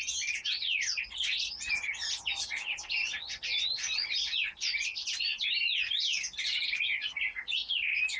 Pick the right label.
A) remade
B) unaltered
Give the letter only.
B